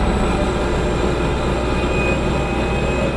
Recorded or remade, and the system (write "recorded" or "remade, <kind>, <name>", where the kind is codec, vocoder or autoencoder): recorded